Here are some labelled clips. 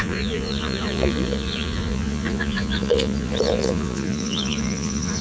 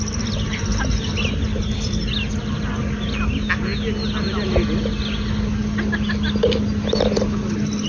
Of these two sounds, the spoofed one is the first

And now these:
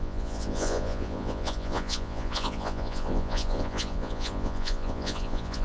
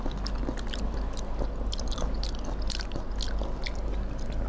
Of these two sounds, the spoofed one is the first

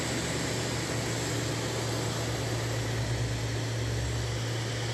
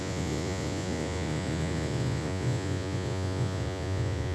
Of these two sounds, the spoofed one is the second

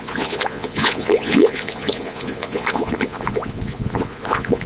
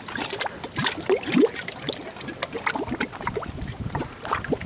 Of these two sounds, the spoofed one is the first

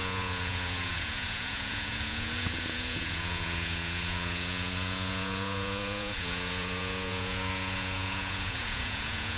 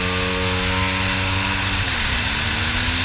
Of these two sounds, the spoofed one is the first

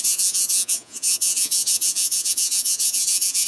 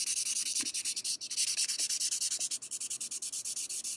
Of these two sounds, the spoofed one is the first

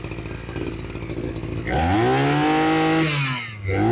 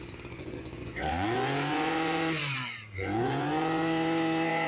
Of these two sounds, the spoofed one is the second